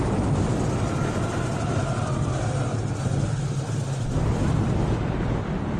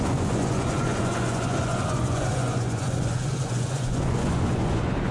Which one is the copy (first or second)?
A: second